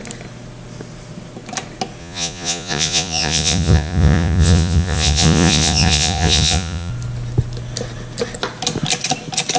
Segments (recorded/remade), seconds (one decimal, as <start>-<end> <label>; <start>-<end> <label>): 0.0-2.0 recorded; 2.0-6.9 remade; 6.9-9.6 recorded